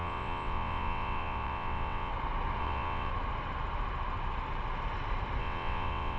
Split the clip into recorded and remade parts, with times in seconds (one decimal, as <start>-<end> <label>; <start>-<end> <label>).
0.0-2.1 remade; 2.1-2.6 recorded; 2.6-3.1 remade; 3.1-5.4 recorded; 5.4-6.2 remade